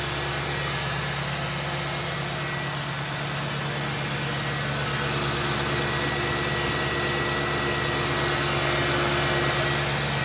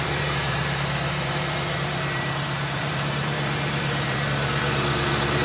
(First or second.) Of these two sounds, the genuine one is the first